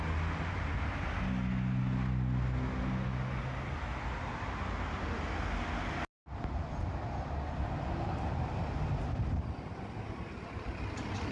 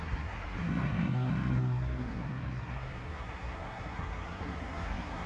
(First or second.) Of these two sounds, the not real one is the second